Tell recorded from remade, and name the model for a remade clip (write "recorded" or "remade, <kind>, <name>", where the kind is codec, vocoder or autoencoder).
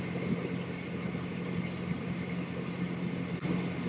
recorded